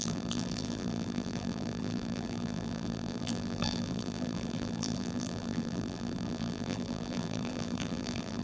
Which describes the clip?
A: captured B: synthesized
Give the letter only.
B